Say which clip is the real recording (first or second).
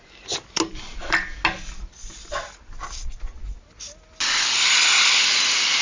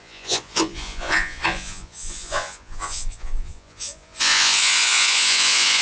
first